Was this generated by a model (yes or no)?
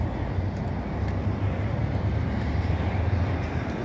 yes